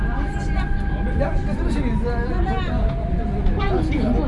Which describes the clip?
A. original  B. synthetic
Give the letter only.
A